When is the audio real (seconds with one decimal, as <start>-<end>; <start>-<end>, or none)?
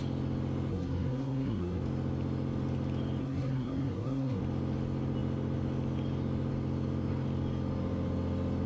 0.0-0.7; 1.8-3.2; 4.4-8.7